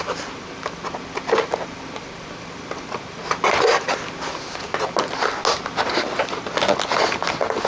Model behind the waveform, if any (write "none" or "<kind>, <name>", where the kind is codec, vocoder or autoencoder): none